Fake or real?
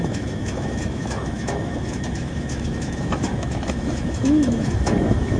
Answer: fake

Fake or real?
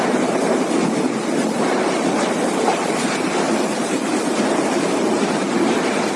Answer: fake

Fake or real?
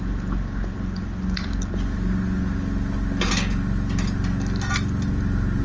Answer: real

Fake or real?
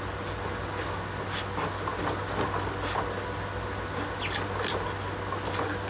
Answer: real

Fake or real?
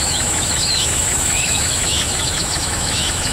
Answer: fake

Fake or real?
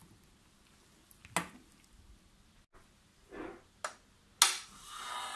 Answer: real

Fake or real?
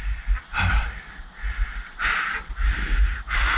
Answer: real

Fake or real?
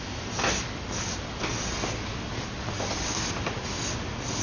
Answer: real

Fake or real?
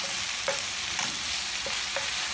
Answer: real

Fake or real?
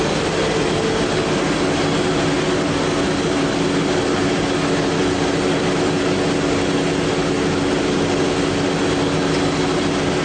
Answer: real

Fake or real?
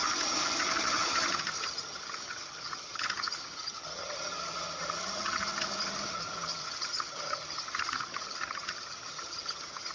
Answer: fake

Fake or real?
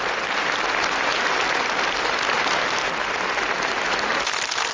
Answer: real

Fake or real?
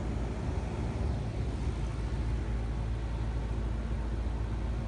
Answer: real